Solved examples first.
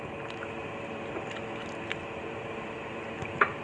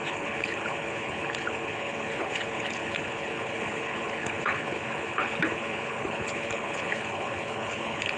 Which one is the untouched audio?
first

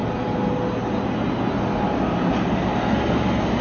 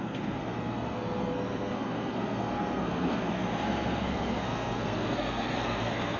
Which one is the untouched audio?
first